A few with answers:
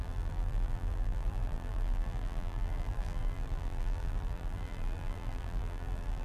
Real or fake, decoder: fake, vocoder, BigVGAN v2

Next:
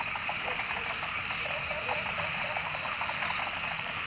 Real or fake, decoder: real